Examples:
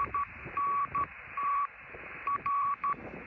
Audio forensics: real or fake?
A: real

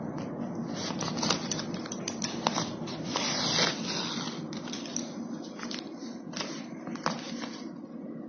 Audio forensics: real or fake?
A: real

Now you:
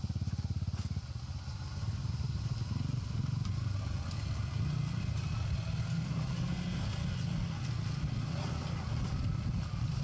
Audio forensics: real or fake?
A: real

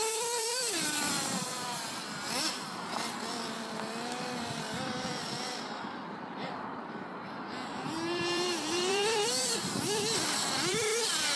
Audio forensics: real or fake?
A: fake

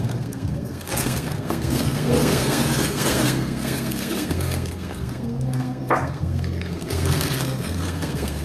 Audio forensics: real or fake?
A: fake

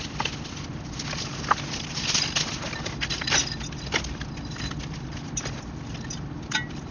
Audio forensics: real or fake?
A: real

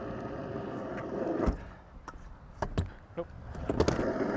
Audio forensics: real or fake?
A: real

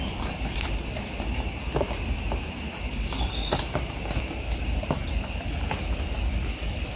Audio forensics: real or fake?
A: real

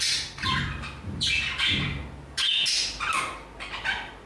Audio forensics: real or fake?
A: real